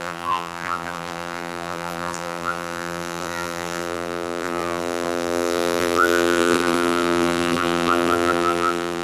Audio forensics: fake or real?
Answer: fake